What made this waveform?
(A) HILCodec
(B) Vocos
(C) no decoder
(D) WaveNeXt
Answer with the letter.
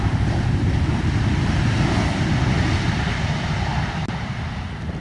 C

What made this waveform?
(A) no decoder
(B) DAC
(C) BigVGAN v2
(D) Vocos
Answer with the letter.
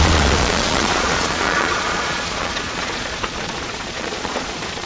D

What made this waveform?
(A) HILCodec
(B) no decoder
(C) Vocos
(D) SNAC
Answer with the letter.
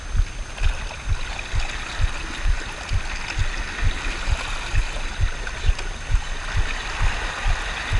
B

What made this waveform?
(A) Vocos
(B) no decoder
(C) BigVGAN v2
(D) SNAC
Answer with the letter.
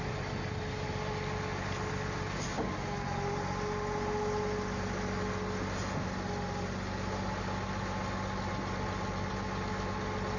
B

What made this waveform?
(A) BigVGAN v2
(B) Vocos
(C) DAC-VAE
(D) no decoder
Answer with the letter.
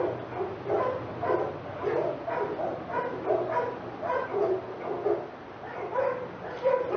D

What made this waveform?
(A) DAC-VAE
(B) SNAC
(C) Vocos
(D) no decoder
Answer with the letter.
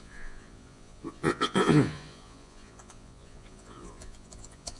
C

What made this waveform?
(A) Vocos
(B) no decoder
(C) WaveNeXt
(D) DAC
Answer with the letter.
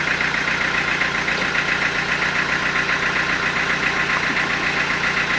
B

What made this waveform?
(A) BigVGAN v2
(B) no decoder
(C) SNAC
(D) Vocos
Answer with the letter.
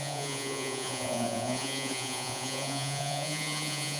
D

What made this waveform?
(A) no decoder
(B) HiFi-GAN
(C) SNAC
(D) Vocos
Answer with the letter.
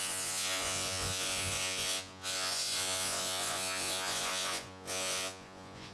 D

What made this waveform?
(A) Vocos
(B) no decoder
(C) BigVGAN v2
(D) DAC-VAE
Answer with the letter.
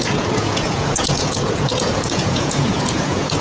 A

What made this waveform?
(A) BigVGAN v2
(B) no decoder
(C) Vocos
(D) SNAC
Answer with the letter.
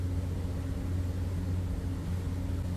B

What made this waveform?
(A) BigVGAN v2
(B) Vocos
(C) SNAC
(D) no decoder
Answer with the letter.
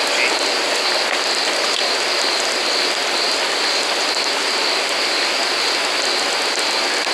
D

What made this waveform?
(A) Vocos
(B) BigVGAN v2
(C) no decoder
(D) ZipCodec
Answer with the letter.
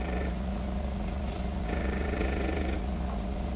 A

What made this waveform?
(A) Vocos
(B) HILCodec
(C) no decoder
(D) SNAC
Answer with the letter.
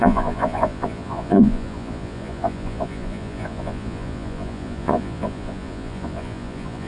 A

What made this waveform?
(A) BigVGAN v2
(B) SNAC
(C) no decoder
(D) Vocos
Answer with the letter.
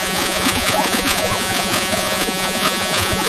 D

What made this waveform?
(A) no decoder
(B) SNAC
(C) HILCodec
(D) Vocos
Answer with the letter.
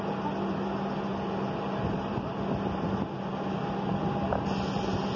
A